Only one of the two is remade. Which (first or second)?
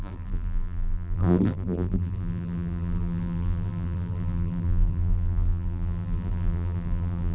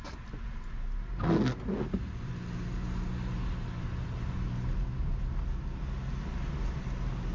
first